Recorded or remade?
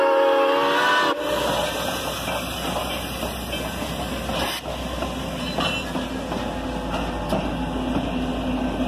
recorded